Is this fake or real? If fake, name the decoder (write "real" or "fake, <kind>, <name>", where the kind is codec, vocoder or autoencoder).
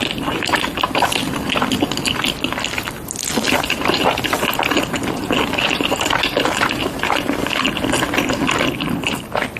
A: real